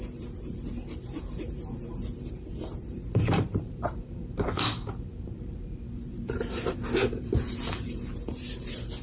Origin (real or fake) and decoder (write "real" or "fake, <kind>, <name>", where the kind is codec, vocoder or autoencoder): fake, vocoder, BigVGAN v2